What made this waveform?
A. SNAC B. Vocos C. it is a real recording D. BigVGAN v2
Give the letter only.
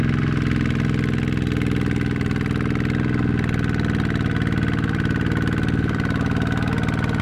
C